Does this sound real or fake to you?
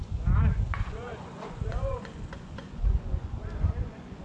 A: fake